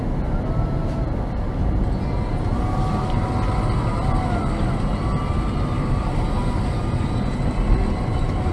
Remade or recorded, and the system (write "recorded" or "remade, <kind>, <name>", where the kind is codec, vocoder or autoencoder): recorded